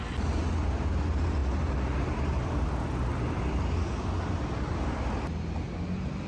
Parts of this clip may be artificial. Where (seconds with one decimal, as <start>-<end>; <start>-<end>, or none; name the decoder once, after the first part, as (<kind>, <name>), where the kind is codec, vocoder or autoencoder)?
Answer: 3.1-3.6 (vocoder, BigVGAN v2)